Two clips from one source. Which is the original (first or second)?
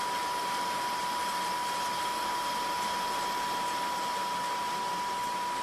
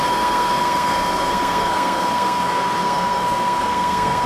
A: first